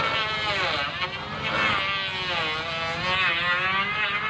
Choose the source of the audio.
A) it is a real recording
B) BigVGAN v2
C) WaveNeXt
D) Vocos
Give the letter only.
A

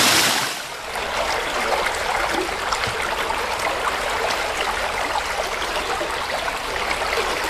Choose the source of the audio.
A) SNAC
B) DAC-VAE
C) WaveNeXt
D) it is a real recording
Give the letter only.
D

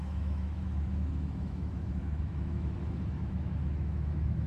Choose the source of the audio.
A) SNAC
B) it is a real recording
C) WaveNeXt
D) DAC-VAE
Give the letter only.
D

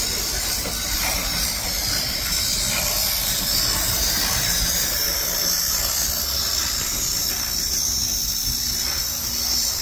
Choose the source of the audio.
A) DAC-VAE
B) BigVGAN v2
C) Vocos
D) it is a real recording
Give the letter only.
D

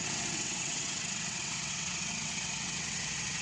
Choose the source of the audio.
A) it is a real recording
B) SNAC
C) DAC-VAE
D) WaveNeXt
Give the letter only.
D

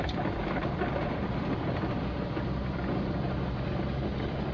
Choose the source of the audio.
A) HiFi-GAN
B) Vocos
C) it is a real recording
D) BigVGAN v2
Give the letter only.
D